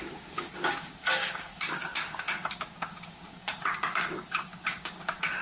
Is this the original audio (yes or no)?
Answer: no